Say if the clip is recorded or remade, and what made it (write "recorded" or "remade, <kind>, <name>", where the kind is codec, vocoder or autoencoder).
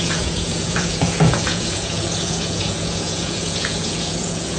remade, vocoder, Vocos